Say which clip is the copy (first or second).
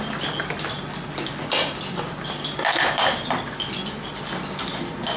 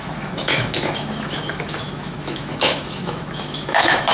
second